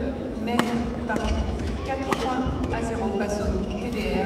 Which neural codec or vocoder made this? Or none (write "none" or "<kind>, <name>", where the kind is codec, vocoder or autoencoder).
autoencoder, DAC-VAE